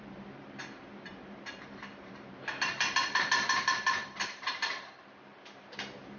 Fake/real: fake